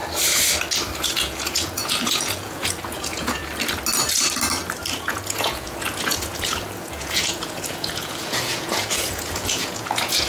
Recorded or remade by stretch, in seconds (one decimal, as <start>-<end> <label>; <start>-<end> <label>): 0.0-1.0 recorded; 1.0-3.4 remade; 3.4-5.0 recorded; 5.0-10.3 remade